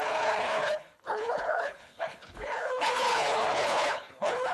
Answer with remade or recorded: remade